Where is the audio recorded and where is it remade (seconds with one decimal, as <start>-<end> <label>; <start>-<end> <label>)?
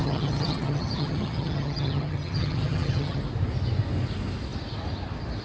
0.0-3.2 remade; 3.2-5.4 recorded